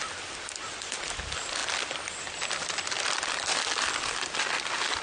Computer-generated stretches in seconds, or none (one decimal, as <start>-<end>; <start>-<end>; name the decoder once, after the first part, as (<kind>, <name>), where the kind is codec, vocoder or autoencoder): none

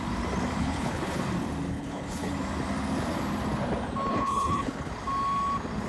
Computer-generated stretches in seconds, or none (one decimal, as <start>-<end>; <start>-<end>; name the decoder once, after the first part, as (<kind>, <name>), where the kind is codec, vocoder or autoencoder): 0.6-1.2 (codec, HILCodec); 1.7-2.3; 4.1-4.9

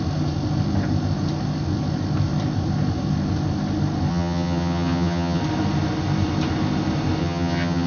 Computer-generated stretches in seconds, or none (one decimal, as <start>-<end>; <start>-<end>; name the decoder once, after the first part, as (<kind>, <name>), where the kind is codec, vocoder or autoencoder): 4.1-5.4 (vocoder, HiFi-GAN); 7.2-7.9

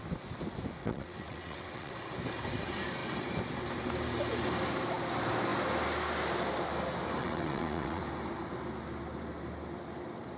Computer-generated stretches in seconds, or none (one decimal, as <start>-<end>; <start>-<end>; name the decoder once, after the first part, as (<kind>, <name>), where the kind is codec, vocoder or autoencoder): 0.8-1.9 (vocoder, WaveNeXt); 7.2-8.0

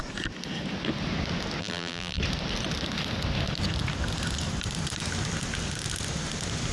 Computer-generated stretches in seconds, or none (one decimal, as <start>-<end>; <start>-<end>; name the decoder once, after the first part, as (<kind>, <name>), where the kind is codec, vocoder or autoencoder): 1.6-2.2 (vocoder, BigVGAN v2)

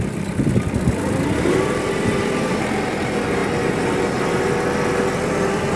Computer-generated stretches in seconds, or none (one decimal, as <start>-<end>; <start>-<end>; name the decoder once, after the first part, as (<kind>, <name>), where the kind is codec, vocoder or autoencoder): none

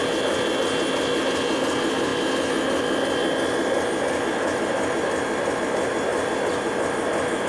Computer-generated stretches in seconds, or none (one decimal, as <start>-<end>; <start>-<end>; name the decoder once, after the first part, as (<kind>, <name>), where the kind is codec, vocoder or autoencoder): none